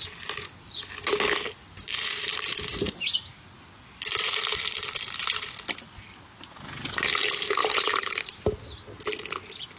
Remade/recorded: recorded